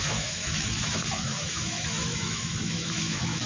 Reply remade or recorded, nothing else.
remade